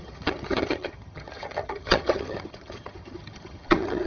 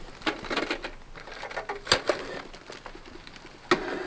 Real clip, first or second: second